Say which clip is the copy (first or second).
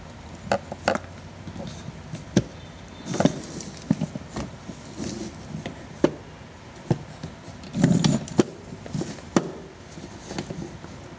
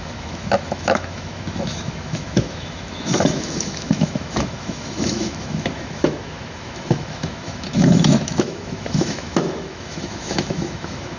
second